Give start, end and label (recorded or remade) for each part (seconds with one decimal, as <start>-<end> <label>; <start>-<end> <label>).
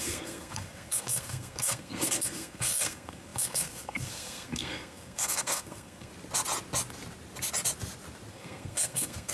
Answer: 0.0-6.1 remade; 6.1-8.3 recorded; 8.3-9.3 remade